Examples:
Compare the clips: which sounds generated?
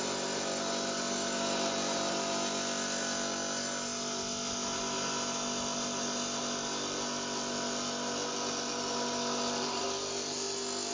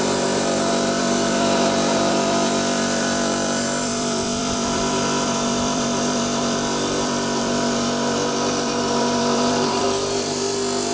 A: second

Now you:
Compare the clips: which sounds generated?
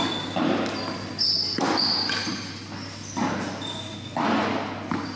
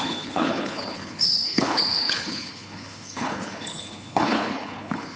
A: second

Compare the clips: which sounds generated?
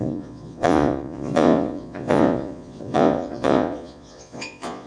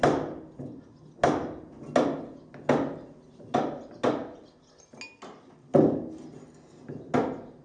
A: first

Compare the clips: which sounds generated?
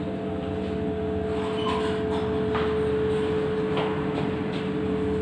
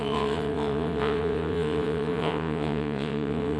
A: second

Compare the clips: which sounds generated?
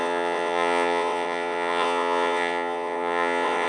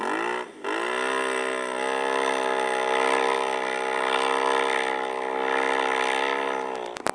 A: first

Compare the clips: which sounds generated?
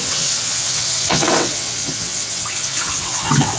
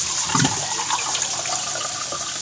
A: first